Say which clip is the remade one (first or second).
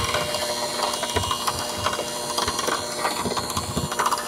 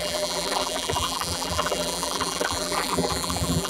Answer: second